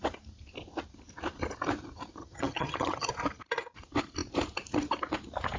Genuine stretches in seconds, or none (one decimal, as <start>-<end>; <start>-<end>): 0.0-2.2; 3.1-5.6